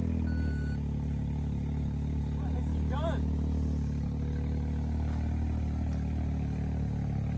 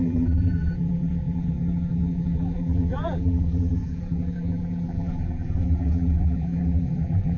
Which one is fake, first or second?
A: second